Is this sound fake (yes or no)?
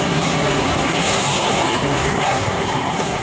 yes